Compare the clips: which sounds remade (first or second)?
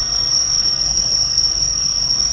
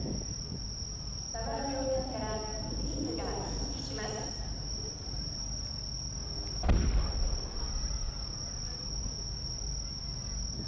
first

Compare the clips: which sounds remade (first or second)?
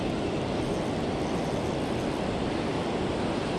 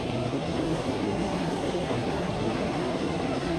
second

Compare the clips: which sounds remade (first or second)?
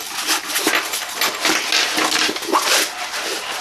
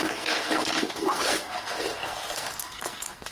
second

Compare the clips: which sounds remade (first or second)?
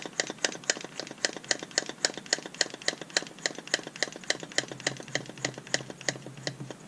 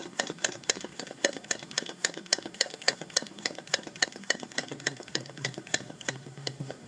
second